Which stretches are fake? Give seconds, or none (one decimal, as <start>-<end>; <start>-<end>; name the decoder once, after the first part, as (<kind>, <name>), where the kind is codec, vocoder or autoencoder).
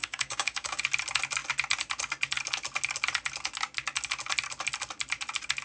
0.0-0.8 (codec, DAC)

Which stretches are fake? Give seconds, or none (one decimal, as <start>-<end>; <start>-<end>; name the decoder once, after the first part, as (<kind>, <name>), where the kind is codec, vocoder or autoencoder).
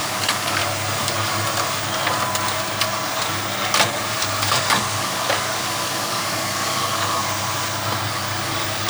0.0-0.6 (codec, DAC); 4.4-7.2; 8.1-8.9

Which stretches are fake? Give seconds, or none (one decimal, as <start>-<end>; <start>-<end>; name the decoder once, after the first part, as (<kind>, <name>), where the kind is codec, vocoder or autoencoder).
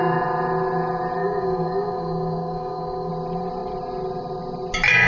1.2-3.1 (codec, DAC)